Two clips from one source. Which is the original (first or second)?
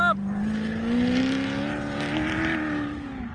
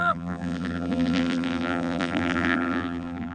first